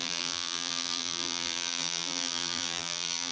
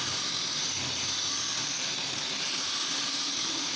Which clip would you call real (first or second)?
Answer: second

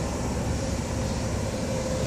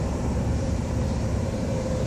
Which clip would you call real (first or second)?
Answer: first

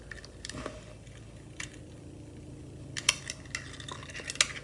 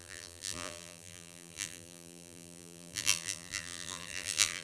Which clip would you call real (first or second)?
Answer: first